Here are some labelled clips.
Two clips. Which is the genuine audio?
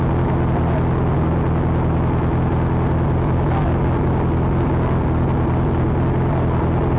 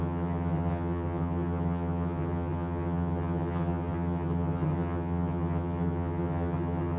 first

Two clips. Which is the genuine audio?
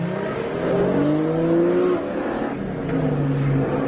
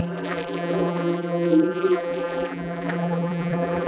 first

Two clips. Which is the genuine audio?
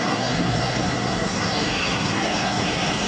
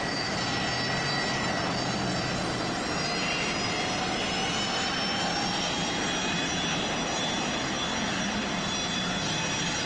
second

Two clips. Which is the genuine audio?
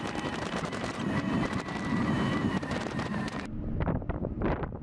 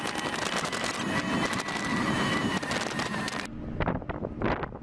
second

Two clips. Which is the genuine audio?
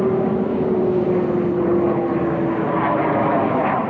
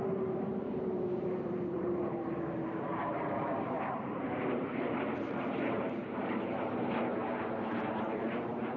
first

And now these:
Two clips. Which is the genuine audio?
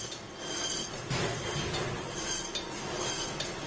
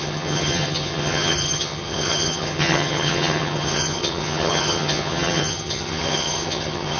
first